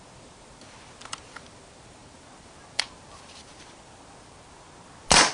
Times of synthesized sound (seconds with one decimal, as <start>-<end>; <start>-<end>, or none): none